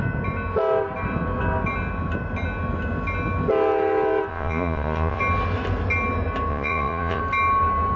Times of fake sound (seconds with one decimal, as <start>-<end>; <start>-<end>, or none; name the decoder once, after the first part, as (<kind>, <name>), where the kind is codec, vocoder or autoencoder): 4.3-5.2 (vocoder, Vocos); 6.5-7.2